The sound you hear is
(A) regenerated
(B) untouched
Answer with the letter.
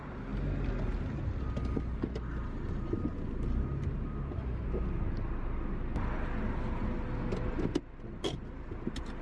B